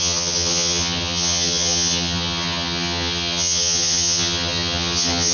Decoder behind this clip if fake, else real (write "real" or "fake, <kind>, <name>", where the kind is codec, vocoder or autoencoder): fake, vocoder, HiFi-GAN